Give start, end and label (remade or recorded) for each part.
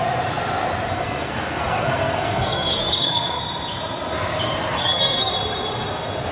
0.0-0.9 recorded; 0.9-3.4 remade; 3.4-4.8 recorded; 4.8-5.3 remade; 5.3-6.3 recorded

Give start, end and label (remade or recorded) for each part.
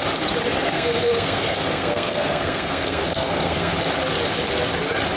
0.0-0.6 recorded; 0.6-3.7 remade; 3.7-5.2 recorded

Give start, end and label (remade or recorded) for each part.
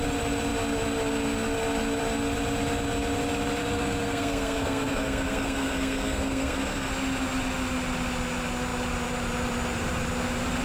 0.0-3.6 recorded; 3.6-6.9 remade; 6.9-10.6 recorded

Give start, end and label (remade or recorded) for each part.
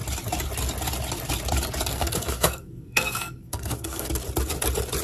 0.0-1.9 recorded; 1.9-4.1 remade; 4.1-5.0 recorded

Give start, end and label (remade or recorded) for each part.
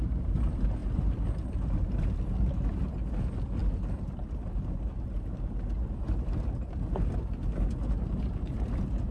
0.0-9.1 recorded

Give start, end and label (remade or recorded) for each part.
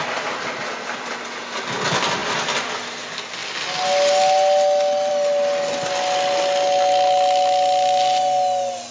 0.0-8.9 recorded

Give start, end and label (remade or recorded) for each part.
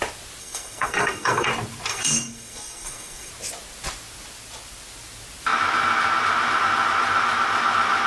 0.0-0.4 recorded; 0.4-1.5 remade; 1.5-1.9 recorded; 1.9-3.3 remade; 3.3-8.1 recorded